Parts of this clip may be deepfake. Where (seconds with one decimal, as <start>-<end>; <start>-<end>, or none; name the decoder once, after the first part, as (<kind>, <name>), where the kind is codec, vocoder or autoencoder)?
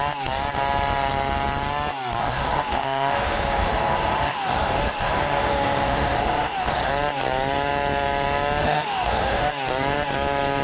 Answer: 2.2-6.9 (autoencoder, DAC-VAE); 8.6-9.5